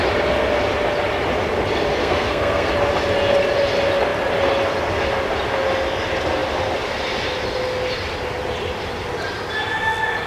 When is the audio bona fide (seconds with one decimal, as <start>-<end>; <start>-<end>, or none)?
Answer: 0.0-2.0; 2.7-10.3